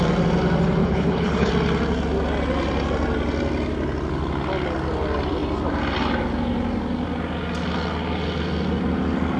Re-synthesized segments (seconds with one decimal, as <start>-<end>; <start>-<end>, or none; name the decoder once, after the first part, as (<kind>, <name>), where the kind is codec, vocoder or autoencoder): 0.8-1.5 (codec, HILCodec)